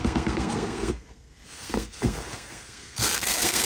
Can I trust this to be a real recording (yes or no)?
no